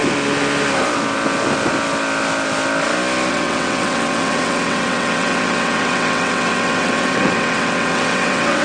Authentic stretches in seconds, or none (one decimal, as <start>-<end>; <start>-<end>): 0.0-3.3